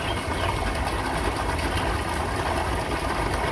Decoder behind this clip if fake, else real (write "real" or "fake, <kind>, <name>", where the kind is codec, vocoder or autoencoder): real